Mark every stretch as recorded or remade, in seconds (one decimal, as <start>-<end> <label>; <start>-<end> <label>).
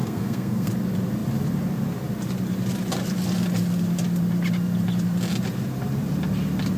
0.0-0.7 remade; 0.7-6.8 recorded